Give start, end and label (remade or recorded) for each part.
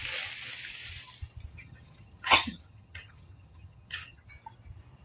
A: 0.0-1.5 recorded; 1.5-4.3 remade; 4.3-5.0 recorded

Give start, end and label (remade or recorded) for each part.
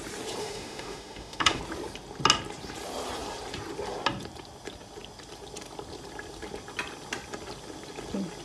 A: 0.0-0.4 recorded; 0.4-1.6 remade; 1.6-8.4 recorded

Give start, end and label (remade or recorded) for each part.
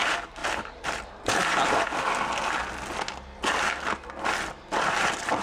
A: 0.0-0.4 recorded; 0.4-1.7 remade; 1.7-5.4 recorded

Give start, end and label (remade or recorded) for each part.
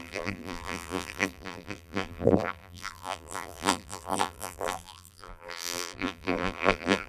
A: 0.0-7.1 remade